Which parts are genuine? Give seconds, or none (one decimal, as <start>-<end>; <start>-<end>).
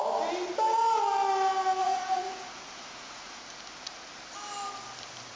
0.0-1.8; 3.4-5.4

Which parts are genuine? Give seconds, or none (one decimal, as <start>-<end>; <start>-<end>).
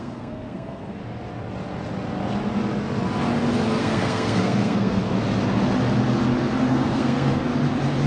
1.0-3.8; 5.0-6.7; 7.5-8.1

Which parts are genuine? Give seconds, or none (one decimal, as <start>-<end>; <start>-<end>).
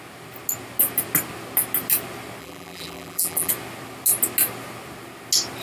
0.0-2.4; 3.5-5.6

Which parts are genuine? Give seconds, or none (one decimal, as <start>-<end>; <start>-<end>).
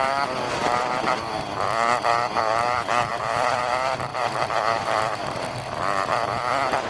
0.0-3.1; 3.6-4.1; 5.4-6.9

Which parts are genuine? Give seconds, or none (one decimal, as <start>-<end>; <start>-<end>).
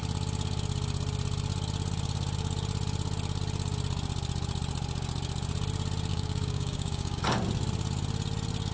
0.0-6.1; 7.2-8.7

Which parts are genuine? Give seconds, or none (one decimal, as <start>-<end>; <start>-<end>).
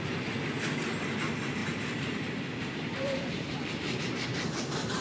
0.0-1.6; 4.0-5.0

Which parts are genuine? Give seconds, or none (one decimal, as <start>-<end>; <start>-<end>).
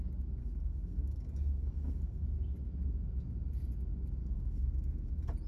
0.0-0.4; 2.2-4.2; 5.1-5.5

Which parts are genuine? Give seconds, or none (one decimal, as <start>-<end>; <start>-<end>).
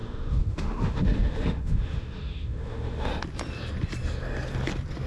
3.1-5.1